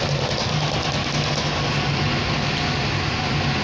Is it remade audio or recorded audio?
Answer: recorded